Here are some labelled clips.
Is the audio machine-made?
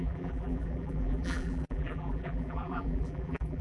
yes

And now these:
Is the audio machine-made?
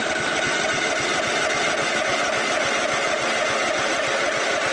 no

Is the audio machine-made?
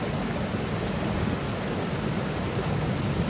no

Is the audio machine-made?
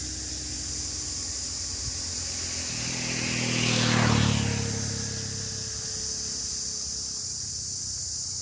no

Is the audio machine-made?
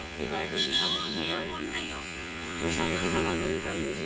yes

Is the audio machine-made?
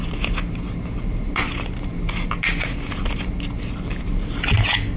no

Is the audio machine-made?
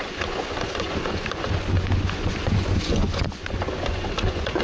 yes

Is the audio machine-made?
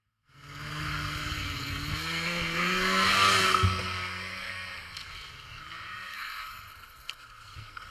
yes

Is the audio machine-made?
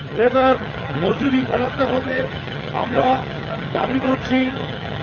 yes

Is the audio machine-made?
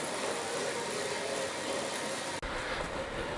no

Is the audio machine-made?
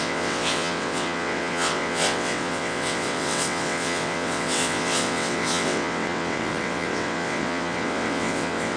yes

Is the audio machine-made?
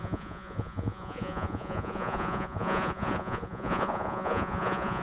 yes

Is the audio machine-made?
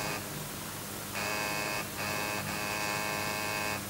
no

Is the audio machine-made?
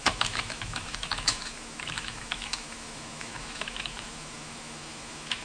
yes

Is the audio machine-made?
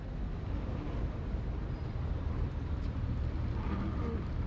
no